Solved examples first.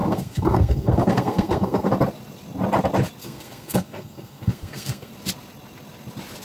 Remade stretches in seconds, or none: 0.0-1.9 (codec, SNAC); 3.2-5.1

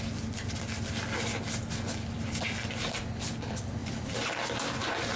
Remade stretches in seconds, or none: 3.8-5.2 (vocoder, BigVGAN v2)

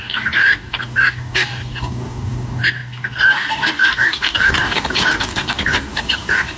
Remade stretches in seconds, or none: 0.0-6.6 (codec, DAC)

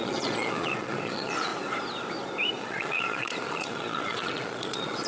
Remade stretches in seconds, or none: 0.0-1.5 (vocoder, Vocos); 2.6-5.1

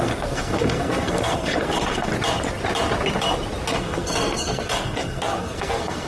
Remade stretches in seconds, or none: 0.0-2.1 (codec, SNAC); 3.8-6.1

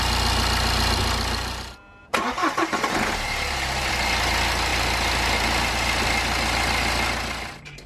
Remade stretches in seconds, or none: 2.0-3.9 (vocoder, BigVGAN v2)

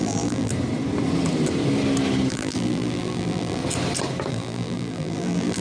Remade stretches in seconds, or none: 0.0-0.5 (vocoder, BigVGAN v2); 2.3-3.6; 4.3-5.6

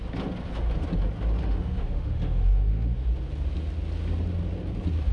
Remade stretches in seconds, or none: 1.4-3.1 (autoencoder, DAC-VAE)